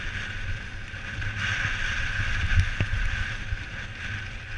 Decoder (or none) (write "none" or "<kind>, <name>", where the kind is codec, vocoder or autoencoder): none